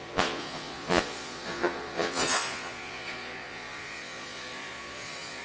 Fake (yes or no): yes